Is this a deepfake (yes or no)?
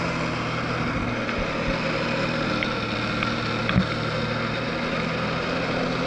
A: no